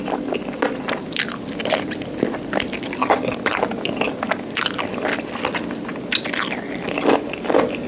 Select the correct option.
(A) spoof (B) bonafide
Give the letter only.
B